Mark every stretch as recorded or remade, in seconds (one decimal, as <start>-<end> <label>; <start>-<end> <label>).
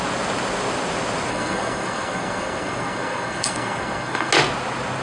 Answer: 0.0-1.3 recorded; 1.3-4.3 remade; 4.3-5.0 recorded